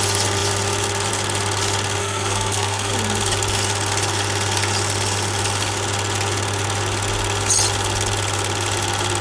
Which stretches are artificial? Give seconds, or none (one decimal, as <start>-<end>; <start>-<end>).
2.0-2.9